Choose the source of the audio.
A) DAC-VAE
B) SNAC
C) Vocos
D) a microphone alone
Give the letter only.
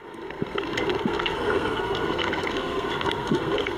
B